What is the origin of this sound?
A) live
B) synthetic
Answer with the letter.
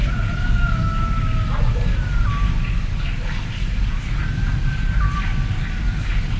A